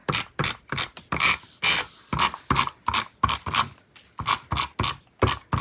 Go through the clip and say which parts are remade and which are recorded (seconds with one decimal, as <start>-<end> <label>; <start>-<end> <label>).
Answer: 0.0-5.6 recorded